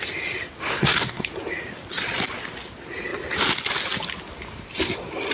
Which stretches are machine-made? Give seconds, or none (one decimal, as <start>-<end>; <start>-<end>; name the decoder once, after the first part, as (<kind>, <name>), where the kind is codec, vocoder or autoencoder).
0.7-1.3 (codec, SNAC)